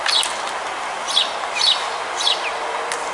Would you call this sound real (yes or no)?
yes